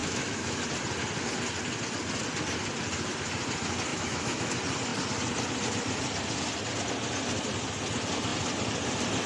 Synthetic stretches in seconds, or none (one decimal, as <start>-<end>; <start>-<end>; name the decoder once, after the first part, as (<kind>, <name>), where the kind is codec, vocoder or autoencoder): 0.0-0.6 (autoencoder, DAC-VAE); 3.9-4.5